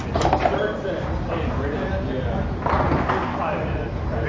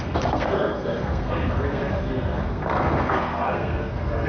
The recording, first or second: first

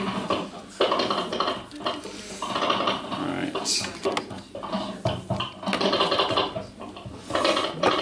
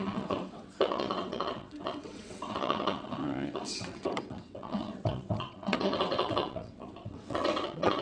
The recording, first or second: first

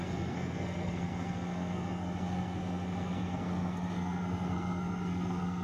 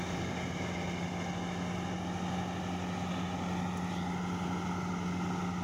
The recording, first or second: second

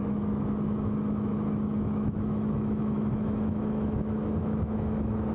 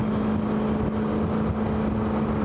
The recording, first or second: second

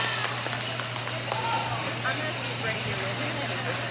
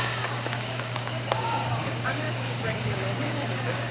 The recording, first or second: first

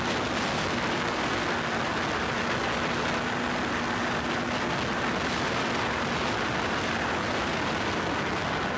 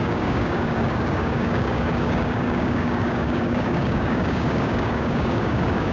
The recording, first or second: first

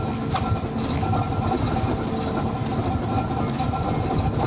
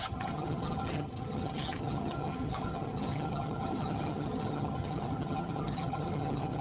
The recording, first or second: first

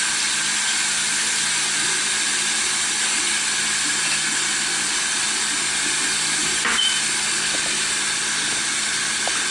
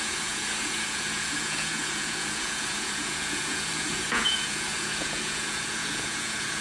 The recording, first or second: first